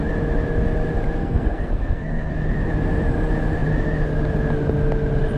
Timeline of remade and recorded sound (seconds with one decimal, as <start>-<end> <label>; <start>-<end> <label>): 0.0-1.2 recorded; 1.2-2.3 remade; 2.3-5.4 recorded